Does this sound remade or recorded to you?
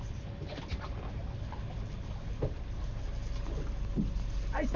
recorded